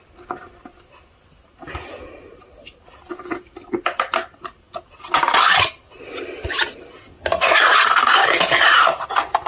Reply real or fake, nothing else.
real